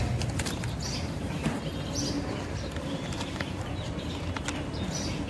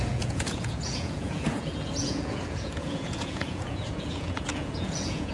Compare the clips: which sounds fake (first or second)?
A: second